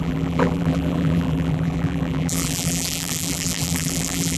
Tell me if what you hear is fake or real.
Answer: fake